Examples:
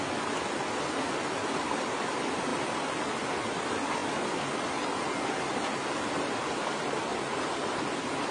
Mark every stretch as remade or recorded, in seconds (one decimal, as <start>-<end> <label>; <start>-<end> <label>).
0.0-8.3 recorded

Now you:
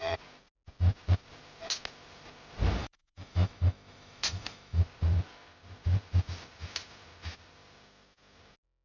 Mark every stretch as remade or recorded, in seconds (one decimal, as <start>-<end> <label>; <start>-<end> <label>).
0.0-2.8 recorded; 2.8-4.8 remade; 4.8-8.8 recorded

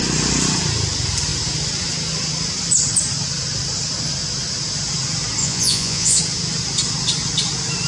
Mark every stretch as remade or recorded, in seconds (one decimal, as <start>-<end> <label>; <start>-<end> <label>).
0.0-5.4 recorded; 5.4-6.2 remade; 6.2-7.9 recorded